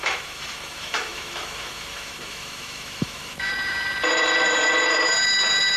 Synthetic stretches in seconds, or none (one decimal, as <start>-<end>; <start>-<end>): 0.0-3.5